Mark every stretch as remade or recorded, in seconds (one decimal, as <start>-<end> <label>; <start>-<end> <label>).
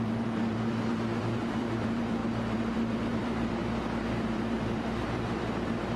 0.0-6.0 remade